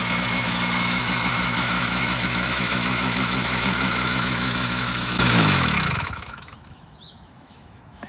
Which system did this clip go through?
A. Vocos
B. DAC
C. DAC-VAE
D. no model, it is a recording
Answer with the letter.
C